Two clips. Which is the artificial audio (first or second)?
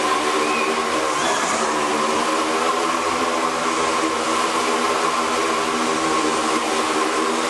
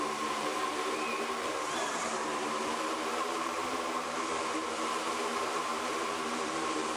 second